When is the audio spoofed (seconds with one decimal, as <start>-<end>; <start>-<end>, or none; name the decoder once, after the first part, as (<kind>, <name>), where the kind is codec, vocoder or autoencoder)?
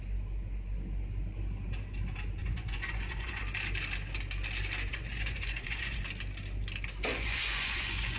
2.4-3.4 (vocoder, Vocos); 4.9-6.0; 7.1-8.2